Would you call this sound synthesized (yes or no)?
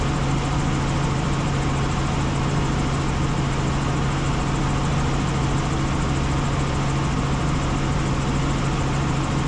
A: no